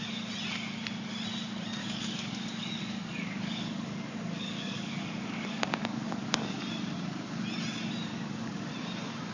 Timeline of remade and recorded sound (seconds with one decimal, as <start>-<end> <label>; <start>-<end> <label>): 0.0-1.8 recorded; 1.8-6.6 remade; 6.6-8.1 recorded; 8.1-8.7 remade; 8.7-9.3 recorded